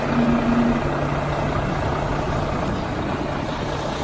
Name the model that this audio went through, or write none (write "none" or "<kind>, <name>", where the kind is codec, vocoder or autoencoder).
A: none